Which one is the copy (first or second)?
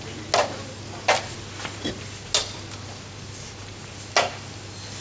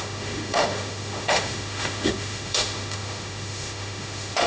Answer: second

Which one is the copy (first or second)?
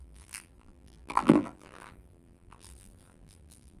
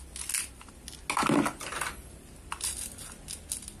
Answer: first